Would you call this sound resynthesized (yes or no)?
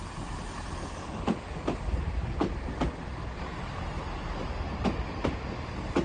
yes